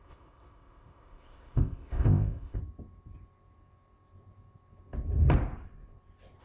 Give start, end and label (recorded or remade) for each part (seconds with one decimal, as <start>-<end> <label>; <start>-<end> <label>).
0.0-2.6 remade; 2.6-6.4 recorded